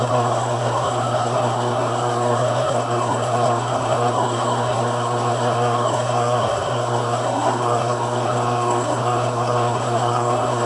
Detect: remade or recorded remade